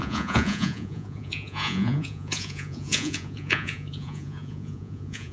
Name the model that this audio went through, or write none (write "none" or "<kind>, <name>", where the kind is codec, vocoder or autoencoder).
vocoder, Vocos